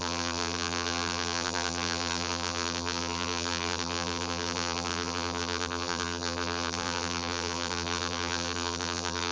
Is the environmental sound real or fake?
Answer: fake